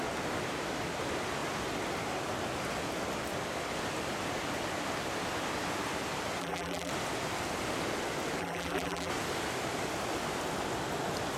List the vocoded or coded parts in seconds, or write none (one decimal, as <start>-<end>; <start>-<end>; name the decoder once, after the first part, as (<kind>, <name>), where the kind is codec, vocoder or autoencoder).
6.4-6.9 (vocoder, BigVGAN v2); 8.4-9.1